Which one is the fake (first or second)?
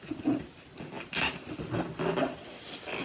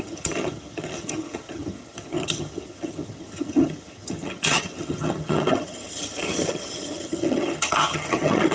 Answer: second